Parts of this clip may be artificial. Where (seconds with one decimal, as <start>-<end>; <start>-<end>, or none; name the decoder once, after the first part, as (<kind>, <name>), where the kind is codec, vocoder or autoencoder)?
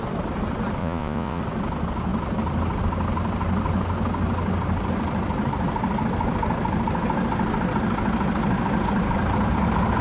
0.8-1.4 (vocoder, Vocos)